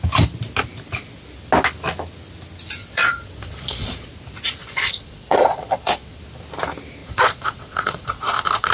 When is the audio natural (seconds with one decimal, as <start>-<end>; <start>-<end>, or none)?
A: 0.0-2.8; 4.1-4.6; 6.2-7.0